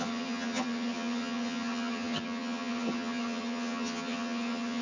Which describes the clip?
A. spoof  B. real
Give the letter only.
A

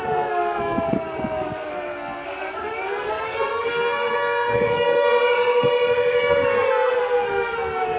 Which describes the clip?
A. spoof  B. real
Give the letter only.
A